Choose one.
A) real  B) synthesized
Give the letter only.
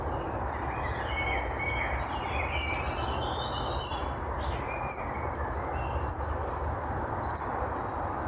A